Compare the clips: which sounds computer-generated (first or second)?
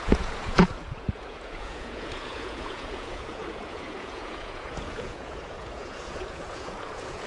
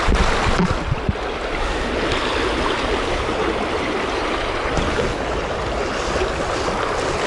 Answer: first